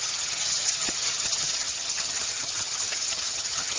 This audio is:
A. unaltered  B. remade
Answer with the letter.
B